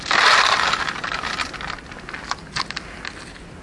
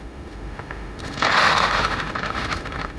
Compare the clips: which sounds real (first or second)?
first